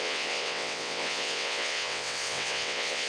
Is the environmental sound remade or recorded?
remade